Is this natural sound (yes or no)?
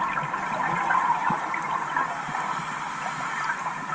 yes